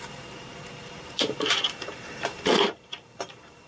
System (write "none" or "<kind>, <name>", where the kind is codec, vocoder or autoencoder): vocoder, BigVGAN v2